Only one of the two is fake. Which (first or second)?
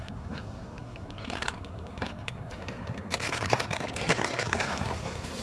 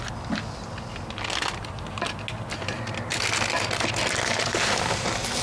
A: first